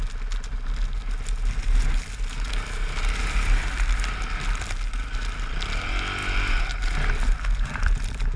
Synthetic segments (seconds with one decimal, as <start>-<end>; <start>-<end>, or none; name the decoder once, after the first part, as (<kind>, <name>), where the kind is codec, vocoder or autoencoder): none